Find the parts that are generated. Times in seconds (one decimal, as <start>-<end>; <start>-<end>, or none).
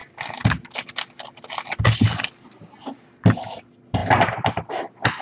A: none